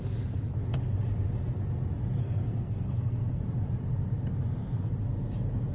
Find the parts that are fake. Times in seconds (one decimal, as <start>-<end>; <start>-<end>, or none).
2.2-3.4